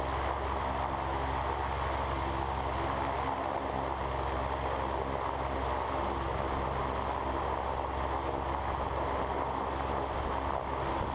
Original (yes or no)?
yes